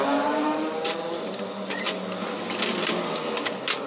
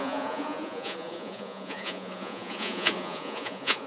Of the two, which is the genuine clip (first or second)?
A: first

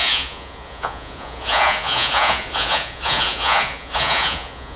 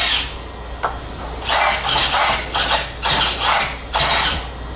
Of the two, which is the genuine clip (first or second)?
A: second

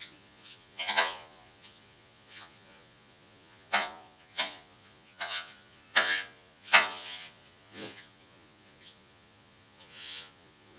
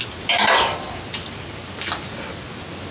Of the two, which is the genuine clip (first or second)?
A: second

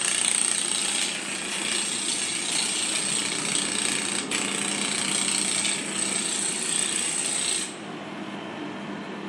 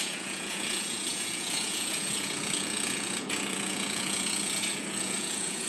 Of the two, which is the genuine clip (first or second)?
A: first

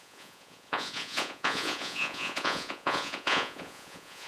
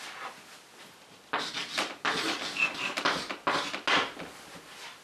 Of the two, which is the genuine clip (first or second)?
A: second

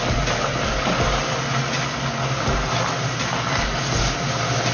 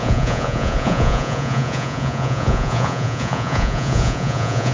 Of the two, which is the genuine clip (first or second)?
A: first